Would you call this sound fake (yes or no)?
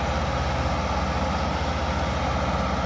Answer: no